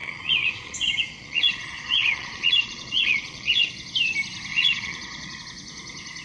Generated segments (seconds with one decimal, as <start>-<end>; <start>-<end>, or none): 0.0-3.7; 4.5-5.4